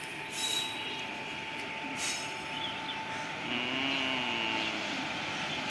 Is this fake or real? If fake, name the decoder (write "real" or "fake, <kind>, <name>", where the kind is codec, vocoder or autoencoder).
real